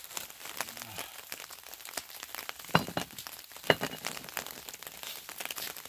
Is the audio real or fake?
real